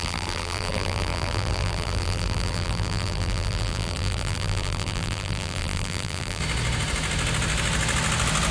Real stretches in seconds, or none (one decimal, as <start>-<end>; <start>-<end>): 6.4-8.5